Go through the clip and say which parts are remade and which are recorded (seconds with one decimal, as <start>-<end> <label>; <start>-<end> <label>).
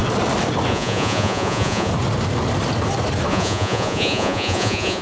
0.0-0.7 recorded; 0.7-1.9 remade; 1.9-3.3 recorded; 3.3-5.0 remade